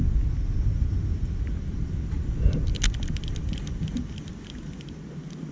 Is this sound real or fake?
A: real